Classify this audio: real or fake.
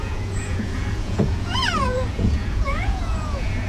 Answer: fake